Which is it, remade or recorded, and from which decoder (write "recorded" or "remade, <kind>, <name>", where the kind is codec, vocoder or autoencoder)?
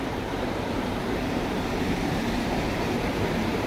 remade, vocoder, BigVGAN v2